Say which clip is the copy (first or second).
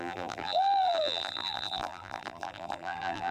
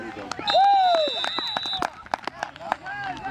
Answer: first